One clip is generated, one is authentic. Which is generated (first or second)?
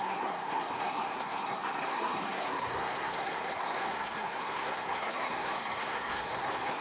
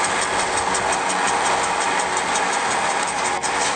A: first